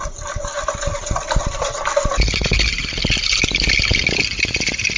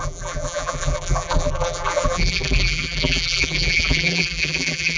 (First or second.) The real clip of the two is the first